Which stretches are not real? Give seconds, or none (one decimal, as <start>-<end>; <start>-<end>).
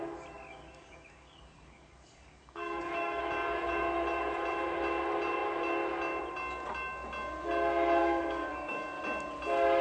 0.5-3.2; 8.0-9.0